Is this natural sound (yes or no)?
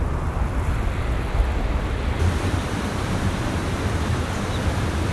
no